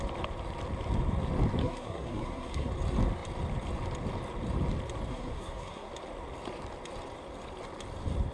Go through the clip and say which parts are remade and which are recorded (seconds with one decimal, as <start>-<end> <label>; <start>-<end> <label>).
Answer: 0.0-1.6 recorded; 1.6-2.7 remade; 2.7-5.1 recorded; 5.1-5.9 remade; 5.9-8.3 recorded